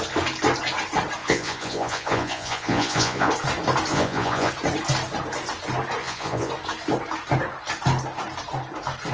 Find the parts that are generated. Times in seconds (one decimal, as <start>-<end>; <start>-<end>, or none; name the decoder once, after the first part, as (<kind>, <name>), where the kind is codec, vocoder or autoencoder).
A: 1.2-3.3 (vocoder, Vocos); 3.9-4.5; 6.0-6.5